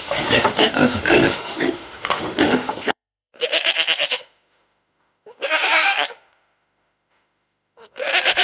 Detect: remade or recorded remade